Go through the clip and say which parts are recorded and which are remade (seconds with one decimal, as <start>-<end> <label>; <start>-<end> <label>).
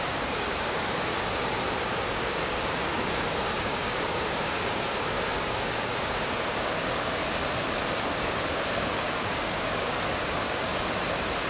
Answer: 0.0-1.1 remade; 1.1-2.1 recorded; 2.1-7.2 remade; 7.2-7.8 recorded; 7.8-10.7 remade; 10.7-11.5 recorded